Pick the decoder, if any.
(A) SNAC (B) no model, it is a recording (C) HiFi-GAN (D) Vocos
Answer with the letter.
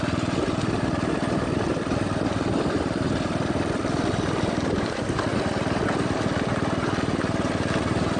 B